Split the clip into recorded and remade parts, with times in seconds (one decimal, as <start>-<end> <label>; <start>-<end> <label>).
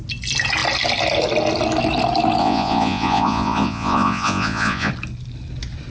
0.0-2.4 recorded; 2.4-4.9 remade; 4.9-5.9 recorded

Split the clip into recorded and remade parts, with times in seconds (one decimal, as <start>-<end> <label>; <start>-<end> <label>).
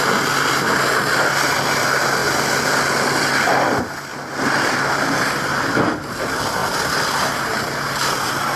0.0-8.6 recorded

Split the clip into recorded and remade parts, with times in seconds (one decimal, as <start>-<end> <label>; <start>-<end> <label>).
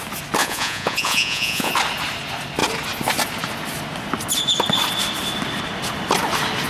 0.0-0.4 recorded; 0.4-1.7 remade; 1.7-6.7 recorded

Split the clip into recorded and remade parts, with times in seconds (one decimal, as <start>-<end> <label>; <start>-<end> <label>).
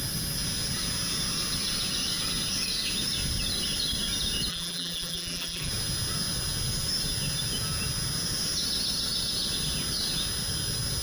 0.0-4.5 recorded; 4.5-5.7 remade; 5.7-11.0 recorded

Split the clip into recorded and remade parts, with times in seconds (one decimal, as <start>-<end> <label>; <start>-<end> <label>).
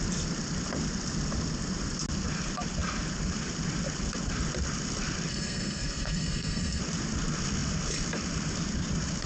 0.0-5.3 recorded; 5.3-6.8 remade; 6.8-9.3 recorded